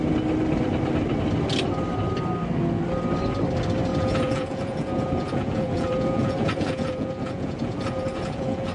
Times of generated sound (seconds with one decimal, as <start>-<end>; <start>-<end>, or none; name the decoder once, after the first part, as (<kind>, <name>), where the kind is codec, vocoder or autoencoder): 3.9-8.7 (vocoder, Vocos)